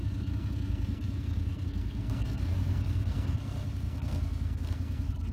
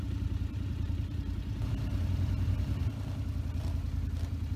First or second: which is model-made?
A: first